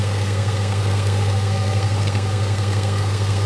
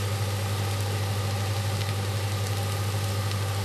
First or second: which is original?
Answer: second